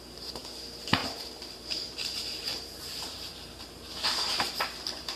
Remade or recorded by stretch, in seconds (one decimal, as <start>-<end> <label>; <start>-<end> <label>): 0.0-1.0 recorded; 1.0-3.7 remade; 3.7-5.2 recorded